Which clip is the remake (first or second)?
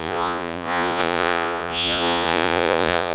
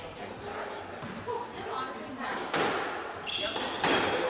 first